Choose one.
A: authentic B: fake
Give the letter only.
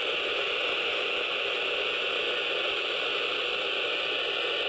A